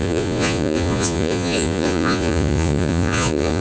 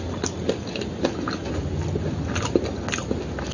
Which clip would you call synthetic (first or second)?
first